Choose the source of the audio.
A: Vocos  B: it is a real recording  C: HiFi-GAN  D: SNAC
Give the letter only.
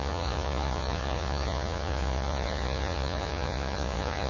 A